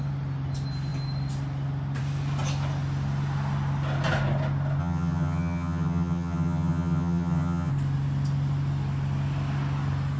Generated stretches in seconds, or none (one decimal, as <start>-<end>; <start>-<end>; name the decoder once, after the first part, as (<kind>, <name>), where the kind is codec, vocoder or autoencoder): 4.8-7.7 (vocoder, HiFi-GAN)